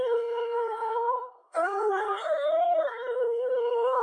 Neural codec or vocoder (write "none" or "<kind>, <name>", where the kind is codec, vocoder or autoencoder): codec, SNAC